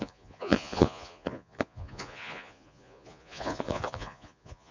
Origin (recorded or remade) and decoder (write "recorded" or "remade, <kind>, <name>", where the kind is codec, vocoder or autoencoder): remade, vocoder, Vocos